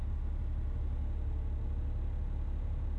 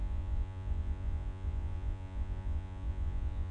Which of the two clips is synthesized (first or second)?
second